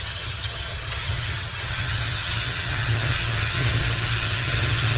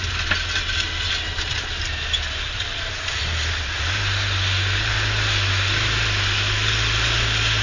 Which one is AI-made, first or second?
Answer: first